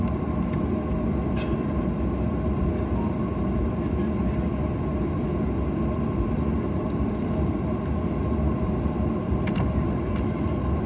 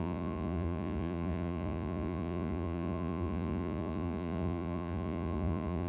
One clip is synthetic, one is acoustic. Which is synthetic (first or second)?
second